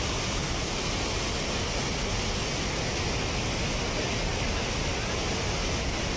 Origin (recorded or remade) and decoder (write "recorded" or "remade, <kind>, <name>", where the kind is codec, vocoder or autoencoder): recorded